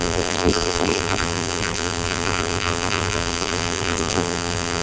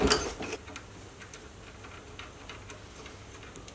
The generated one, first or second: first